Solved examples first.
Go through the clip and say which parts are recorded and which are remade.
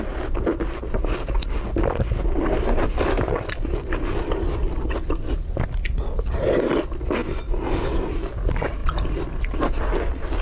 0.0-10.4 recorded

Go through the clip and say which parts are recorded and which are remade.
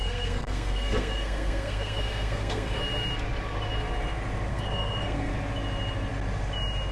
0.0-2.8 remade; 2.8-4.5 recorded; 4.5-5.3 remade; 5.3-6.9 recorded